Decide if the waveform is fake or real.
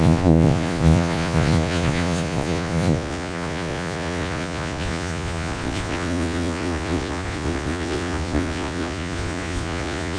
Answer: fake